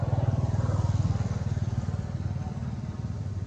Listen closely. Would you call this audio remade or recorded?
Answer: recorded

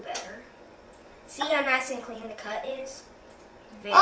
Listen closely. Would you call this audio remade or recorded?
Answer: remade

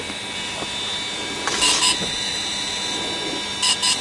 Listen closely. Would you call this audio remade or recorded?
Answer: recorded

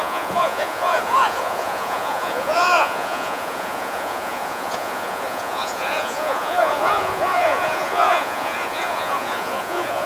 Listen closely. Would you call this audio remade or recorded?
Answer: remade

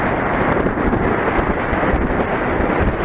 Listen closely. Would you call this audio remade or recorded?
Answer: recorded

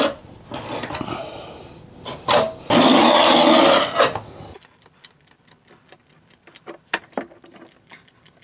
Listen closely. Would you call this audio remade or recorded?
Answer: recorded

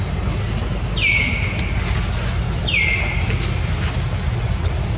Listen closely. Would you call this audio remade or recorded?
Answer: recorded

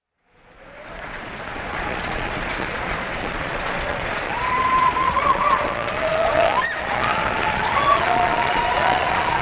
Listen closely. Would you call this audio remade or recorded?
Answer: remade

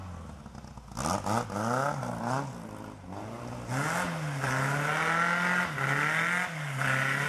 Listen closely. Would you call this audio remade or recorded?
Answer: recorded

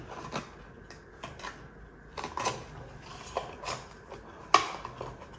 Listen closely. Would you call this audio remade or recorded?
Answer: recorded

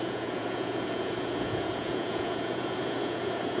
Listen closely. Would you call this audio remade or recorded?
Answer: remade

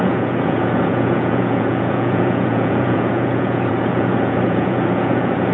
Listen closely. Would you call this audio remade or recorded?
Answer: remade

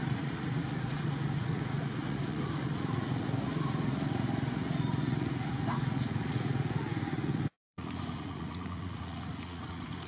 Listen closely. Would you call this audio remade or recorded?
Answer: remade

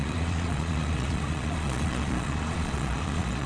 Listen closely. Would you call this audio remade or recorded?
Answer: remade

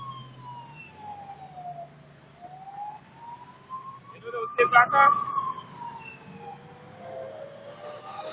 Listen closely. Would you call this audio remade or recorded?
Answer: recorded